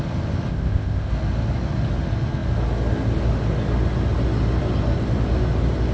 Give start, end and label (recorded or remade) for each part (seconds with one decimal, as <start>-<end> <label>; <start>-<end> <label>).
0.0-0.5 recorded; 0.5-1.1 remade; 1.1-5.9 recorded